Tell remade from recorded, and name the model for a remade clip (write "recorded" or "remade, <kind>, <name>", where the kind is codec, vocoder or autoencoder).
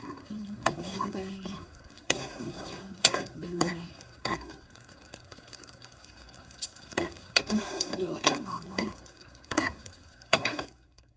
remade, codec, SNAC